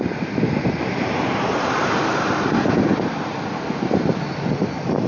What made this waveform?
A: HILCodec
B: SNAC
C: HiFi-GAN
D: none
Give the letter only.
D